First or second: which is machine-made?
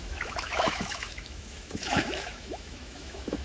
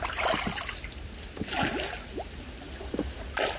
first